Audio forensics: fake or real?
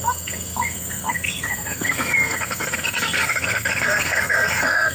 fake